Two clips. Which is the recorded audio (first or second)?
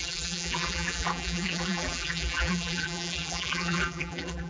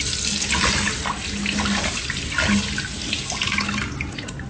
second